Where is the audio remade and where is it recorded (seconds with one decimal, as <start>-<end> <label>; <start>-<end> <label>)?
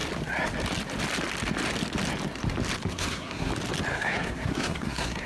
0.0-2.9 recorded; 2.9-3.5 remade; 3.5-3.9 recorded; 3.9-5.3 remade